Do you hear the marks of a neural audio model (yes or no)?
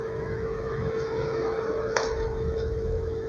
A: yes